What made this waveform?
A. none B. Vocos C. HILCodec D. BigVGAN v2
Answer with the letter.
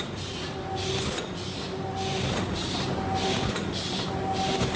A